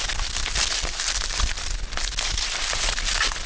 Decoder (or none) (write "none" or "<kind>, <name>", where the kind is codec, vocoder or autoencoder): none